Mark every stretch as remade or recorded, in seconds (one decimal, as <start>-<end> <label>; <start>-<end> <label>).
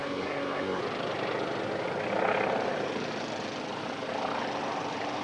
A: 0.0-0.8 remade; 0.8-5.2 recorded